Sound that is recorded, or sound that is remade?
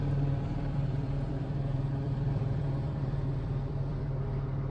remade